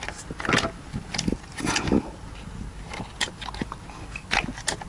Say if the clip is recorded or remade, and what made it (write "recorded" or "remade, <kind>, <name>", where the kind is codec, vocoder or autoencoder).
recorded